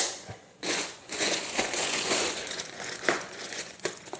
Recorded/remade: remade